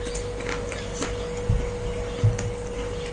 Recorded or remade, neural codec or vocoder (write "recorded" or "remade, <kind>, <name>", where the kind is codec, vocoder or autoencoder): recorded